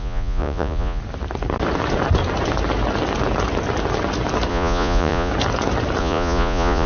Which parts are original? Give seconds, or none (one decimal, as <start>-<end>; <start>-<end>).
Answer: 1.0-4.5; 5.3-6.0